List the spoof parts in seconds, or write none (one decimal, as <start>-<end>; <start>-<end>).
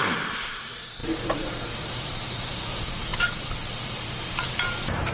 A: 0.0-5.1